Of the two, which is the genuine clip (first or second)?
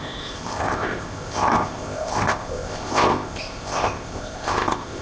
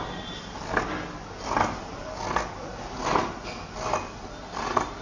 second